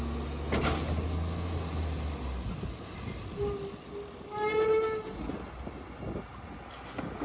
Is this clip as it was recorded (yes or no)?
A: yes